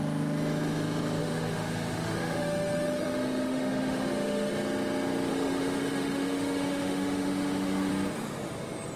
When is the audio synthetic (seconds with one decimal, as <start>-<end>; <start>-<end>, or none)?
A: 1.2-4.5; 5.3-7.9